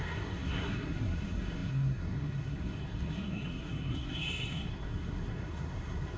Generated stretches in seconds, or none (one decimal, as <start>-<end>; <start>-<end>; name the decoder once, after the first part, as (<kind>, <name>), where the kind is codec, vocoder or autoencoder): 0.0-6.2 (codec, SNAC)